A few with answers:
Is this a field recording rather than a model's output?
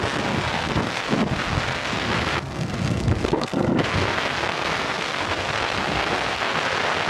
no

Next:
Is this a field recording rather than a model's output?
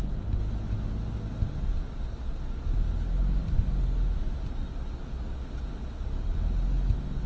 yes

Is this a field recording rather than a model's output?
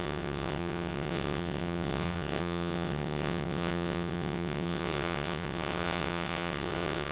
no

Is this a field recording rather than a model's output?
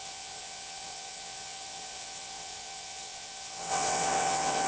no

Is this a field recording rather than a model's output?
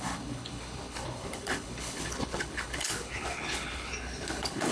no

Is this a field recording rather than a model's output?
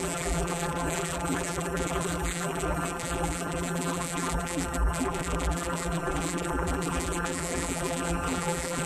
no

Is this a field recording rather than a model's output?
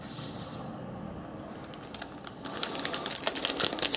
yes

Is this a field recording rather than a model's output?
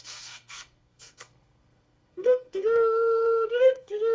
no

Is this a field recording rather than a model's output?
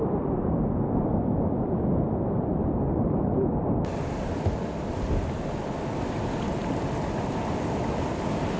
yes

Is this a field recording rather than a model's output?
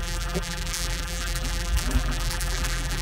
no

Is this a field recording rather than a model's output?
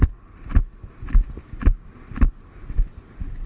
yes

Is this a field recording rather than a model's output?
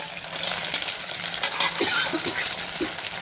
yes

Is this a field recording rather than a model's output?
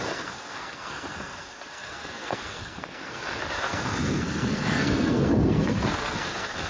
no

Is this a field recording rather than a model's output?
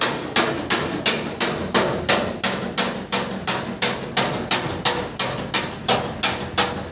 yes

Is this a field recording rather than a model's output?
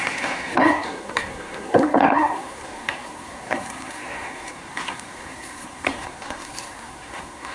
no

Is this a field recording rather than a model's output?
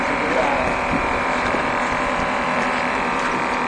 no